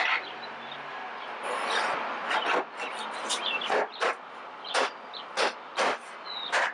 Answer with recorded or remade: recorded